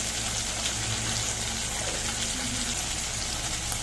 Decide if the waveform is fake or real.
real